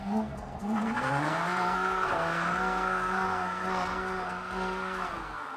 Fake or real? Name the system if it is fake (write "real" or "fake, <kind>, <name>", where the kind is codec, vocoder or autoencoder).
fake, codec, SNAC